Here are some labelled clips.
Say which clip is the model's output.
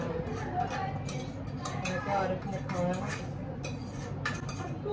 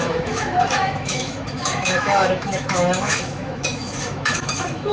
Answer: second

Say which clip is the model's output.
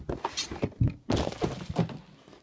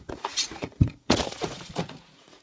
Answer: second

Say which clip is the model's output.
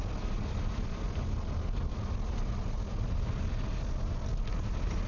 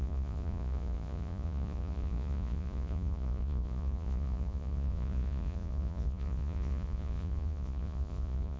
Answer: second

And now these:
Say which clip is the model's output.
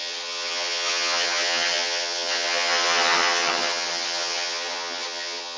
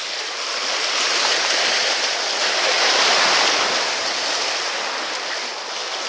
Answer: first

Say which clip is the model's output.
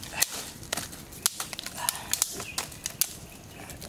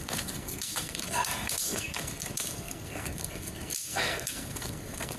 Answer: second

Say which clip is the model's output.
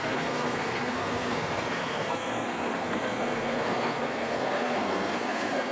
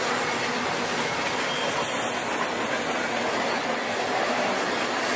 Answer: first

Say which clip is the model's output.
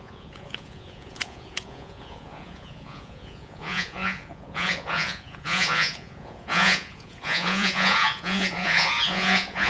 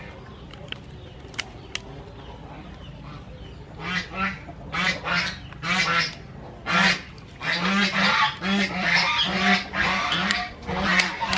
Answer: first